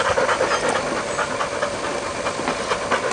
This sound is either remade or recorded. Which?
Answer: recorded